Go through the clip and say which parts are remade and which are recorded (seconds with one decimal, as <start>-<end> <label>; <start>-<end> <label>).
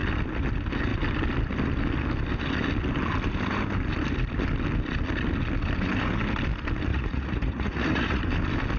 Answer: 0.0-6.9 recorded; 6.9-8.2 remade; 8.2-8.8 recorded